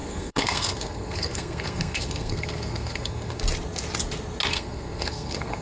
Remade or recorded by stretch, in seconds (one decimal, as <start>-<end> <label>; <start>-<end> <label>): 0.0-3.4 remade; 3.4-4.5 recorded; 4.5-5.6 remade